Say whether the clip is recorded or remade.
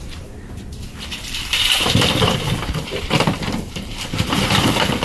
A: remade